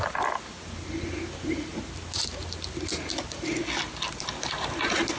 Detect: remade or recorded recorded